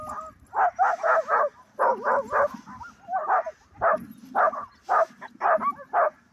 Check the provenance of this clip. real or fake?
real